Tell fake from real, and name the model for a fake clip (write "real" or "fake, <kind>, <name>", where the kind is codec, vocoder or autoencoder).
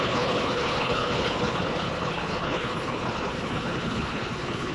fake, codec, HILCodec